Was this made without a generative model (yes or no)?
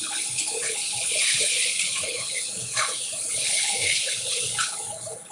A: no